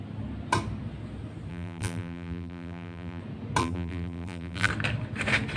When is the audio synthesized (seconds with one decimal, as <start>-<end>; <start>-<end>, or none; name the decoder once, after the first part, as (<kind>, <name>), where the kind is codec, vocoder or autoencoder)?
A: 1.5-3.2 (vocoder, BigVGAN v2); 3.6-4.7